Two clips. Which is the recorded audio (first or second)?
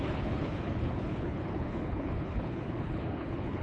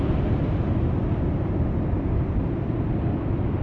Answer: second